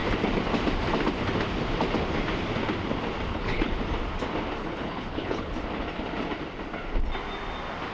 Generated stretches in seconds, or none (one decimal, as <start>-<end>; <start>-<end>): 3.3-3.8; 4.6-5.5